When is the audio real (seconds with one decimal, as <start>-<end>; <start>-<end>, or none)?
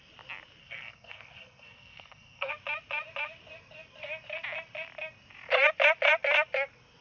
0.0-0.6; 2.5-7.0